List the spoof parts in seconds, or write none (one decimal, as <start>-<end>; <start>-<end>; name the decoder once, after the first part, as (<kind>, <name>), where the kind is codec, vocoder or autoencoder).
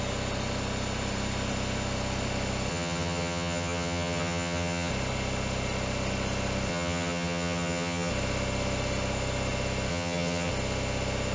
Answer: 2.7-4.9 (vocoder, HiFi-GAN); 6.7-8.1; 9.9-10.5